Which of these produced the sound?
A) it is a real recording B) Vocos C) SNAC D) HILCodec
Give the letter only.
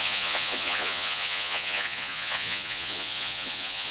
B